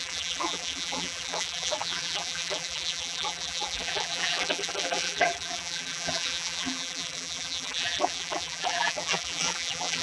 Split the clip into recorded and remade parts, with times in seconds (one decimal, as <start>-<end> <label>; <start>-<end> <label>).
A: 0.0-10.0 remade